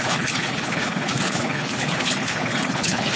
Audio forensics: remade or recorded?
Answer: remade